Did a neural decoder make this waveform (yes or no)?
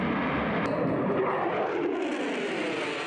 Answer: no